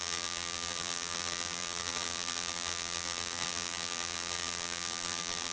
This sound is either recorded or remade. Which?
remade